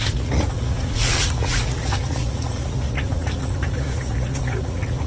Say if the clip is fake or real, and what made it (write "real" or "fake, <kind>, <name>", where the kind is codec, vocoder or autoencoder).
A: fake, vocoder, Vocos